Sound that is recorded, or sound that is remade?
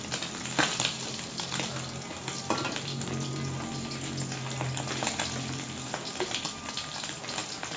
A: recorded